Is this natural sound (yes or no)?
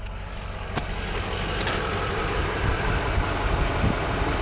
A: yes